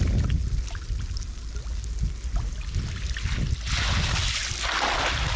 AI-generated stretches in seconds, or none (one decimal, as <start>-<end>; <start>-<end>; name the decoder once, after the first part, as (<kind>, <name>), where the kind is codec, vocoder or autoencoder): none